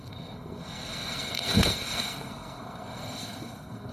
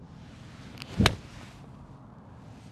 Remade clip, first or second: first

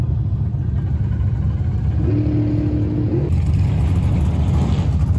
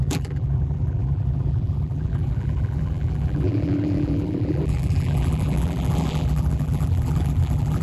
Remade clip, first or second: second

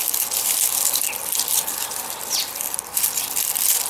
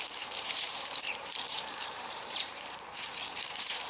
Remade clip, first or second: second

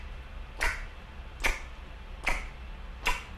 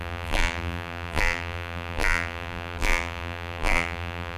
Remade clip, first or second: second